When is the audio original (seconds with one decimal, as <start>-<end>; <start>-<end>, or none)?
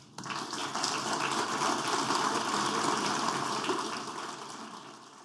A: 0.0-5.2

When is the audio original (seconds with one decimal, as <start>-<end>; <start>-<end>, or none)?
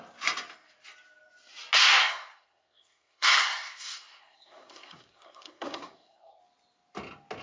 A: 0.0-2.0; 6.4-7.4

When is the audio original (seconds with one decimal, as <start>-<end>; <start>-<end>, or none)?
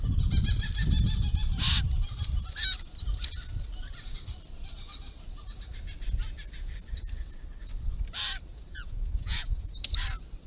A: 0.0-8.5; 9.7-10.5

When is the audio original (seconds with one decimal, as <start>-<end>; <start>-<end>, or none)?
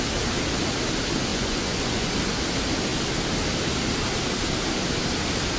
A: 0.0-1.3; 2.1-5.6